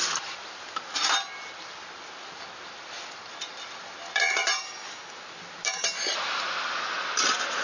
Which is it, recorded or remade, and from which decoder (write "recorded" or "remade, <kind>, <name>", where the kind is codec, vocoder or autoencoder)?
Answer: recorded